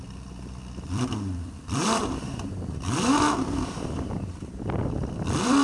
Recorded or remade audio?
remade